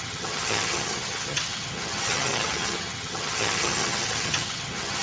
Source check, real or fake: fake